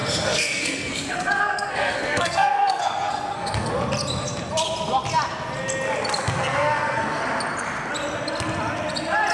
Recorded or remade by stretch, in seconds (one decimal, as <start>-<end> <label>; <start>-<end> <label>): 0.0-3.7 remade; 3.7-6.2 recorded; 6.2-7.2 remade; 7.2-9.3 recorded

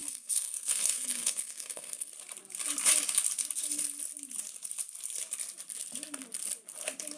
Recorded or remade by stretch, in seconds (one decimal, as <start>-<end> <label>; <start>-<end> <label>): 0.0-2.1 remade; 2.1-7.2 recorded

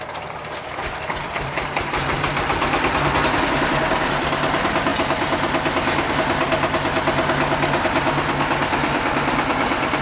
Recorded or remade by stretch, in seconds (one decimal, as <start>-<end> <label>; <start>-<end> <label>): 0.0-1.2 recorded; 1.2-2.3 remade; 2.3-10.0 recorded